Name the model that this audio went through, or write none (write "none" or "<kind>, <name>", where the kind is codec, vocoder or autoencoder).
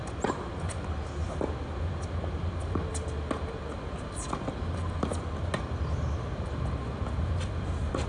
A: none